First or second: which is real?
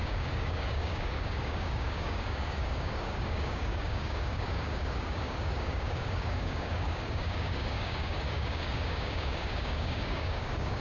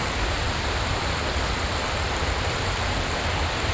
second